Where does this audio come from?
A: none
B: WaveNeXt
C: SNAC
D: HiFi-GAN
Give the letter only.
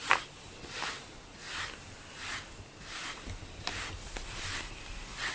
A